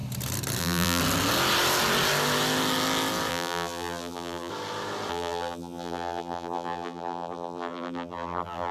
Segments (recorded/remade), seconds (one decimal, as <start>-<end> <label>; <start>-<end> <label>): 0.0-0.6 recorded; 0.6-1.0 remade; 1.0-3.3 recorded; 3.3-4.5 remade; 4.5-5.1 recorded; 5.1-8.7 remade